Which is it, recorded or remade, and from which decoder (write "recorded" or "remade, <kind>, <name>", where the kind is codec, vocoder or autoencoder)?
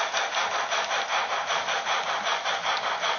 recorded